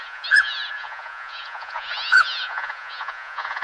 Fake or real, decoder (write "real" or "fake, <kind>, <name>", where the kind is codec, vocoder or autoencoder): fake, vocoder, Vocos